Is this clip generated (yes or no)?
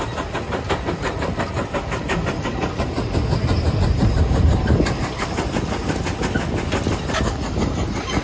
no